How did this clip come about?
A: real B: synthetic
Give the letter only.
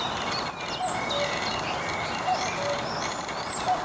A